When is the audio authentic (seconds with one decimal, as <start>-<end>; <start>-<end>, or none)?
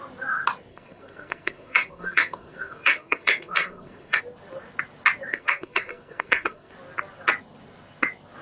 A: 0.0-0.7; 4.2-5.3; 6.7-8.4